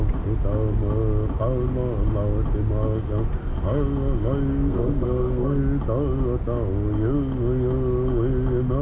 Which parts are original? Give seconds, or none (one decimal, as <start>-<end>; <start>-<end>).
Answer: 0.0-4.5; 5.6-8.8